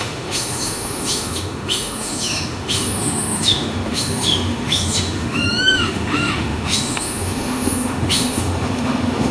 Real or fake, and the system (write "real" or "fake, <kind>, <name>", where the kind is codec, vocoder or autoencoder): fake, autoencoder, DAC-VAE